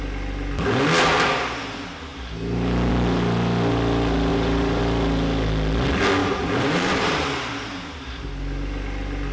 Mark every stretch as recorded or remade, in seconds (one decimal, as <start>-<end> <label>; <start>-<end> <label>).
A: 0.0-4.3 recorded; 4.3-4.8 remade; 4.8-6.2 recorded; 6.2-7.5 remade; 7.5-9.3 recorded